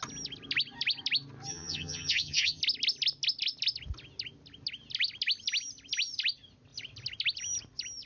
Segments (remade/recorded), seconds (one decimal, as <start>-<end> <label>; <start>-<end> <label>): 0.0-1.5 recorded; 1.5-2.6 remade; 2.6-8.1 recorded